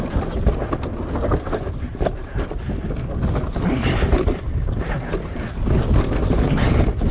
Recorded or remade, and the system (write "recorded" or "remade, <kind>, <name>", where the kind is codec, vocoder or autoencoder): recorded